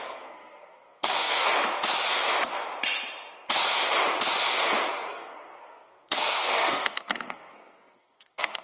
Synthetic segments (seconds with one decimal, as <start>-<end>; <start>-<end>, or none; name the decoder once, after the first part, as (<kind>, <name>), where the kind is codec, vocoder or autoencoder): 0.0-1.5 (codec, SNAC); 5.1-8.6